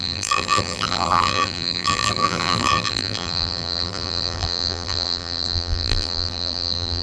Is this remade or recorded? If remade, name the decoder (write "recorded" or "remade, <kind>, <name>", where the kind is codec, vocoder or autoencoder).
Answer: remade, vocoder, BigVGAN v2